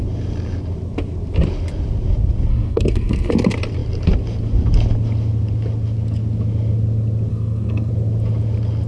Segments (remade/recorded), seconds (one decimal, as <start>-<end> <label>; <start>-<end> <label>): 0.0-2.5 recorded; 2.5-3.3 remade; 3.3-7.3 recorded; 7.3-7.9 remade; 7.9-8.9 recorded